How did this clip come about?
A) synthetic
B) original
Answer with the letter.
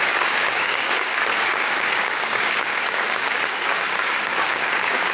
A